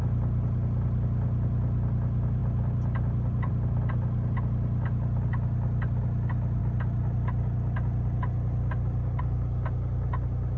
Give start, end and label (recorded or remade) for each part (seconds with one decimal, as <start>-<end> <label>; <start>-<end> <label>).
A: 0.0-10.6 recorded